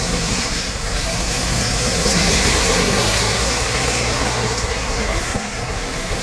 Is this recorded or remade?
remade